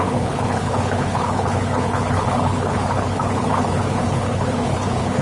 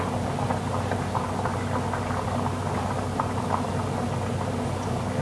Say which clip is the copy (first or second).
first